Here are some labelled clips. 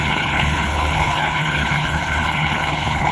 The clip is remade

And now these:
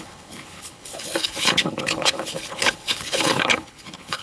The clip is remade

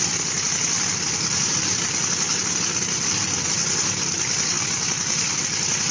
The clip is recorded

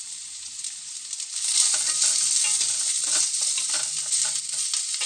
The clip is recorded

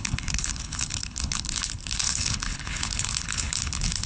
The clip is remade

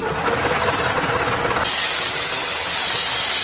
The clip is recorded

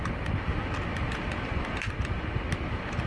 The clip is recorded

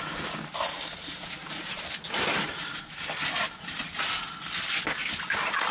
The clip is recorded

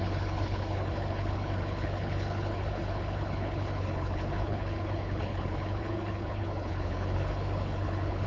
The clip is remade